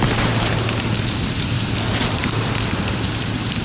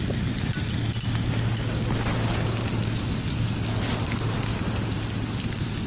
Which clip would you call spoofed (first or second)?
first